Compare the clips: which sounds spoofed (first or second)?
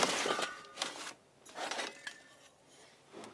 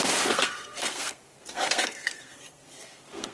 second